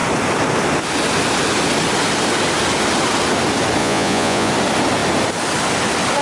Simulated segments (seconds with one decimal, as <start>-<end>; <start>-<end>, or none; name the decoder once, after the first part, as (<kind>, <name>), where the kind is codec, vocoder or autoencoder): 3.8-4.5 (vocoder, Vocos)

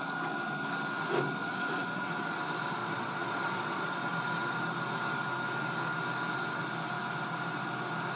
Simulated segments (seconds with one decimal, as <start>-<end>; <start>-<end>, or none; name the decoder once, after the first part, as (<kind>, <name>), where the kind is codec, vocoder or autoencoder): 1.4-2.1 (vocoder, Vocos); 2.8-4.0

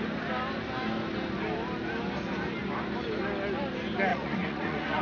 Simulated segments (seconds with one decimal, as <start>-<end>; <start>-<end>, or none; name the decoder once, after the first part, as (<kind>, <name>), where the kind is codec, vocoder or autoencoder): 4.1-5.0 (vocoder, Vocos)

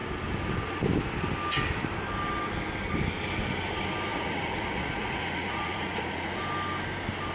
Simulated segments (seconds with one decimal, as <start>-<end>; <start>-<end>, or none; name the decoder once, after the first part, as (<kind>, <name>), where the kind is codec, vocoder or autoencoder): 4.1-6.4 (vocoder, Vocos)